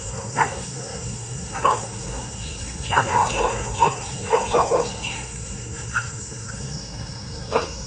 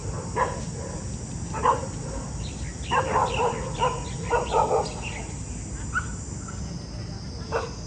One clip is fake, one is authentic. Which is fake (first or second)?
first